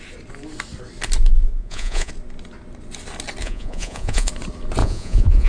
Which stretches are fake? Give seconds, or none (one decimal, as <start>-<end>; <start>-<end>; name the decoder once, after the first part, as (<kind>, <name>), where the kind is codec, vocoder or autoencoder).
1.5-2.1 (vocoder, Vocos); 3.4-4.3; 4.8-5.5